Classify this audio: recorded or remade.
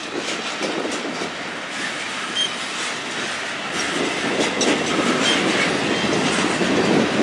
recorded